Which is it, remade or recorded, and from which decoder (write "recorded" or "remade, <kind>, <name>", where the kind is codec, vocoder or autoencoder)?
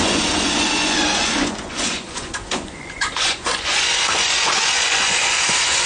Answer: remade, vocoder, Vocos